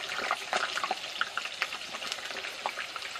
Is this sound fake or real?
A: real